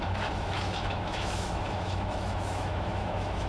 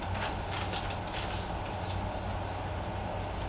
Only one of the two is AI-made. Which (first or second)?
first